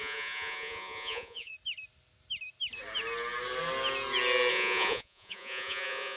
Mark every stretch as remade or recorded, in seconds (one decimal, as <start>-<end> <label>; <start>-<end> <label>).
0.0-1.5 remade; 1.5-4.5 recorded; 4.5-6.2 remade